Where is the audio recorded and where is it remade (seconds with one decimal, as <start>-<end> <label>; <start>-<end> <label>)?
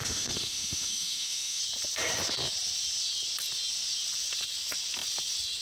0.0-1.6 remade; 1.6-5.6 recorded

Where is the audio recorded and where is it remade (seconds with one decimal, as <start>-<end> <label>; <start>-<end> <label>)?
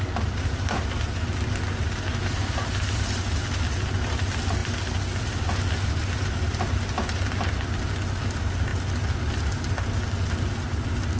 0.0-11.2 recorded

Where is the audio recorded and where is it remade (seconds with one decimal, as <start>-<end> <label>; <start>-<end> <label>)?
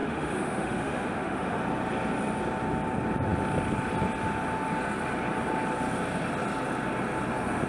0.0-1.6 remade; 1.6-7.7 recorded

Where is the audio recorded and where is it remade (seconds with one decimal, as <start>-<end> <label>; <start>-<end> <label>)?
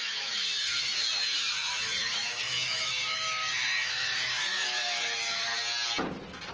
0.0-5.5 remade; 5.5-6.5 recorded